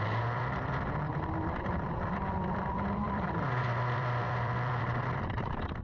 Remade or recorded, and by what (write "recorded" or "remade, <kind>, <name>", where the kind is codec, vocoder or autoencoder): remade, vocoder, BigVGAN v2